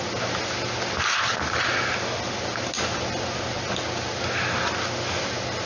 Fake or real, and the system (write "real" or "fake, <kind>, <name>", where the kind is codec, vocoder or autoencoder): real